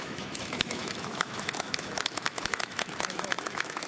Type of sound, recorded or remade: remade